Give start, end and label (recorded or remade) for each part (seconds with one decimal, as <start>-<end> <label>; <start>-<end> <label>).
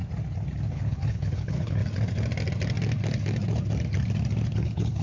0.0-0.7 recorded; 0.7-1.8 remade; 1.8-4.5 recorded; 4.5-5.0 remade